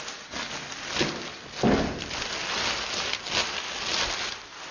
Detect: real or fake real